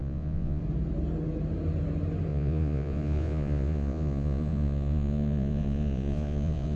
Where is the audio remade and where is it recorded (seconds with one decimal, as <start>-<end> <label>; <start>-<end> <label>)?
0.0-0.6 remade; 0.6-2.3 recorded; 2.3-6.8 remade